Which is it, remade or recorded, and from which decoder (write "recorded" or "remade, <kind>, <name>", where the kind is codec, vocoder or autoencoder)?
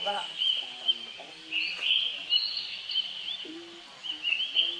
recorded